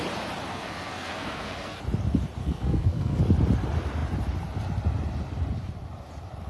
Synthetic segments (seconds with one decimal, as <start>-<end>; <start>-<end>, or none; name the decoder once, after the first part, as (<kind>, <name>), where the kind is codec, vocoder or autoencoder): 0.5-1.8 (codec, SNAC); 2.4-3.2

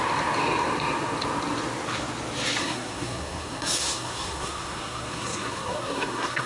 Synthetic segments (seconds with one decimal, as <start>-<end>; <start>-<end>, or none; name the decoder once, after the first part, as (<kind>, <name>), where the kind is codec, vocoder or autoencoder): 2.6-6.5 (codec, SNAC)

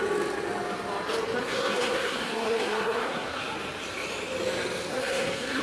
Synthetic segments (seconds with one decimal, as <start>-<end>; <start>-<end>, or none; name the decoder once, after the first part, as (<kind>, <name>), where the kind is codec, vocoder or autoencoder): 1.4-3.4 (codec, SNAC); 4.9-5.6

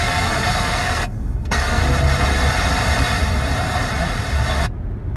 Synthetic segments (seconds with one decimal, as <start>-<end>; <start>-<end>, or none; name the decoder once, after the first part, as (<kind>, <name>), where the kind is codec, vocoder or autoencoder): 0.0-1.8 (codec, SNAC)

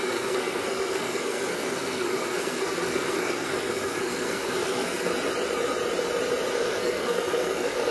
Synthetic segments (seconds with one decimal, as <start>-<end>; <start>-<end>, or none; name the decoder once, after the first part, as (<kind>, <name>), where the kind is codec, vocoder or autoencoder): 0.0-5.1 (codec, SNAC); 6.5-7.9

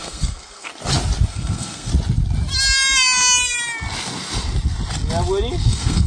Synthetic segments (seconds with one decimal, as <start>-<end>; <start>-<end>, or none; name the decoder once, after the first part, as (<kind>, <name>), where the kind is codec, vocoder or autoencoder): 0.0-0.7 (codec, SNAC); 1.3-1.9; 5.6-6.1